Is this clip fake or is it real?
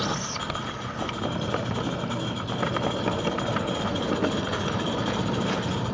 real